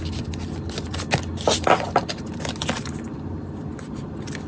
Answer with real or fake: real